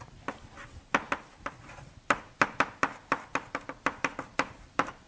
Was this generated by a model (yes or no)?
no